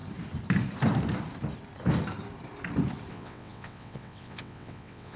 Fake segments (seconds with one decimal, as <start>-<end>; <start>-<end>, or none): 3.1-5.2